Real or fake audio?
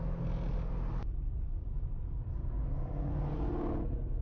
real